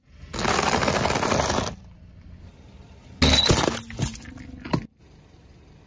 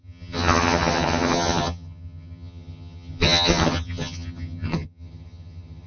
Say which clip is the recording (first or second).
first